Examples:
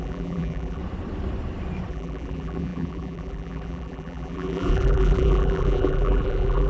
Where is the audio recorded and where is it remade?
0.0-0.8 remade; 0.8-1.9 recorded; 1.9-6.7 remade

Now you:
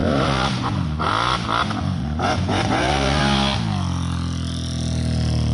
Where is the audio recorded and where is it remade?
0.0-1.1 remade; 1.1-1.6 recorded; 1.6-3.2 remade; 3.2-5.5 recorded

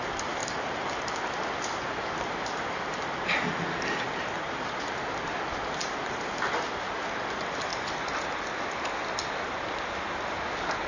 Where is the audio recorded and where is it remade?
0.0-0.4 recorded; 0.4-0.9 remade; 0.9-10.9 recorded

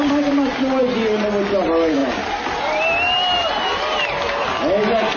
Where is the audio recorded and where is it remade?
0.0-5.2 recorded

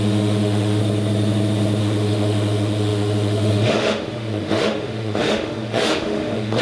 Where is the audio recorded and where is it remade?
0.0-0.8 remade; 0.8-1.8 recorded; 1.8-6.6 remade